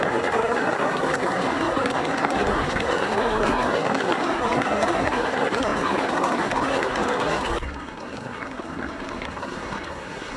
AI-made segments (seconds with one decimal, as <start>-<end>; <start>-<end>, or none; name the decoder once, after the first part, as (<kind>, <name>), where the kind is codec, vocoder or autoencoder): 0.0-10.4 (codec, SNAC)

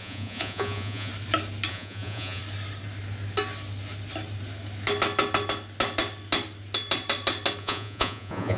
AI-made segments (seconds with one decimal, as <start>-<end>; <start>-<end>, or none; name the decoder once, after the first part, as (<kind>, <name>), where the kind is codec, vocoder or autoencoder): 0.0-1.1 (vocoder, Vocos); 1.7-2.4; 7.6-8.6

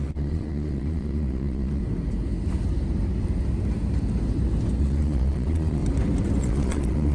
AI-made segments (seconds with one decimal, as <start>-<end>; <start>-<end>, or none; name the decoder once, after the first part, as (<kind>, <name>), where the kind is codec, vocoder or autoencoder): 0.0-1.8 (vocoder, Vocos); 4.8-5.8; 6.4-7.1

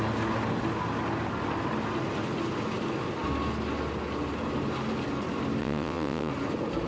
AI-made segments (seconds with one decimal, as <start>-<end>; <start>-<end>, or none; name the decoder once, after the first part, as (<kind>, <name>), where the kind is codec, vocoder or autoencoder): 5.6-6.3 (vocoder, WaveNeXt)

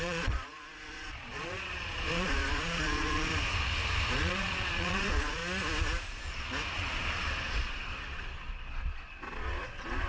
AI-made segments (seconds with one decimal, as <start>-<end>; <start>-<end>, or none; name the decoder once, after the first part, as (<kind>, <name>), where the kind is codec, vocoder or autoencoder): 0.0-3.3 (vocoder, Vocos); 4.1-5.4; 6.7-10.1

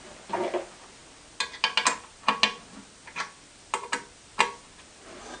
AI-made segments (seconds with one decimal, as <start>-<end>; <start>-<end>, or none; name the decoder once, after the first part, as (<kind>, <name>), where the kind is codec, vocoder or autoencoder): none

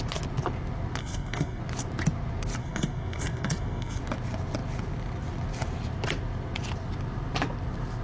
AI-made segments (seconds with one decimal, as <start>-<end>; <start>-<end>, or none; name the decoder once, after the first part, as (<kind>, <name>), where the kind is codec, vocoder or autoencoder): 1.0-1.6 (codec, SNAC); 2.6-4.0